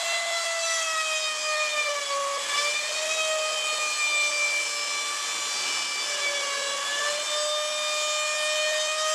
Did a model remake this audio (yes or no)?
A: no